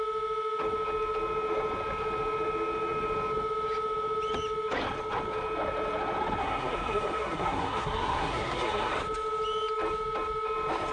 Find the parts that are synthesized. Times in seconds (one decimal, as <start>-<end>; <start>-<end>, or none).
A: 6.4-8.9